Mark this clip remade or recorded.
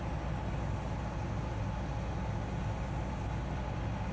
recorded